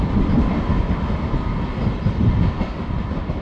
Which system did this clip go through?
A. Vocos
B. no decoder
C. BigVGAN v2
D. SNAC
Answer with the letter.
B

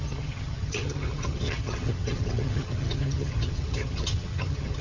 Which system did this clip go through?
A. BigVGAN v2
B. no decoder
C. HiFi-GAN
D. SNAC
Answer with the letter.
C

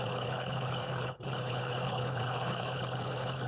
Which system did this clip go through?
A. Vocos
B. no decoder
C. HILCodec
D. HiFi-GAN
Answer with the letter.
C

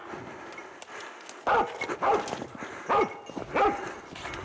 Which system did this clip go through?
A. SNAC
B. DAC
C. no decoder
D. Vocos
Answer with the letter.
C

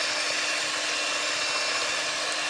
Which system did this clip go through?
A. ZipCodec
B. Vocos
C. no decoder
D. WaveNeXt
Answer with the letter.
C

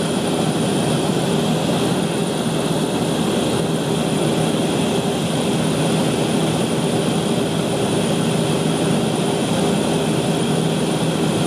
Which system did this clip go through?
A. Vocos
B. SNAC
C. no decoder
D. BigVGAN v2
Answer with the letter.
C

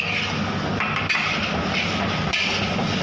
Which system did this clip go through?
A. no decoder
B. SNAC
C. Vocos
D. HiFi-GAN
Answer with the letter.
A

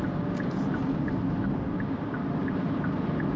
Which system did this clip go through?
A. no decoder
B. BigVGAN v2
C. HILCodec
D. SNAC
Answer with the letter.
A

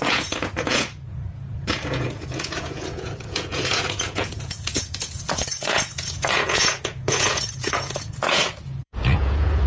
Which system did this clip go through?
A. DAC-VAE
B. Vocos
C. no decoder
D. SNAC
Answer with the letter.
B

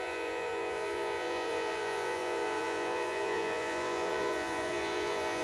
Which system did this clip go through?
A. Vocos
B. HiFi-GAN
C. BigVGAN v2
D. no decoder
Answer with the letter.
A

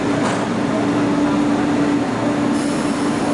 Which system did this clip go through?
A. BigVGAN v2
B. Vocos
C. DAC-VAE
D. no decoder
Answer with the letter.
D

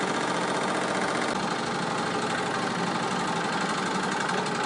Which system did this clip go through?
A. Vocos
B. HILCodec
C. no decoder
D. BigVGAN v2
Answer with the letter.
C